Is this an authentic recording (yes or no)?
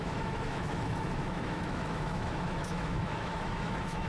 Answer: no